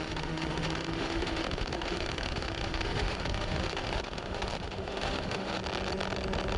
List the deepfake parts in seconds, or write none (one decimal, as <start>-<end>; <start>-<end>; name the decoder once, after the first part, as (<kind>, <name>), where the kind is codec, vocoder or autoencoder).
0.0-5.6 (autoencoder, DAC-VAE)